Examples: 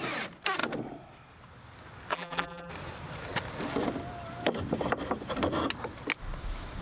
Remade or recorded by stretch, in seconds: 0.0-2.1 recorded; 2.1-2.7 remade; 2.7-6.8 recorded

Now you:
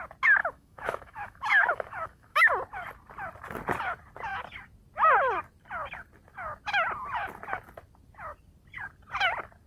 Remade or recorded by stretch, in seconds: 0.0-0.4 recorded; 0.4-2.5 remade; 2.5-9.7 recorded

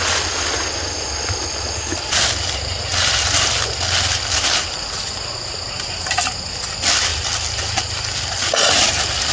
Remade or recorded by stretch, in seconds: 0.0-9.3 recorded

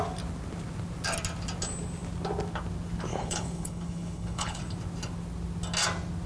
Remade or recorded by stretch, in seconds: 0.0-3.1 recorded; 3.1-4.6 remade; 4.6-6.3 recorded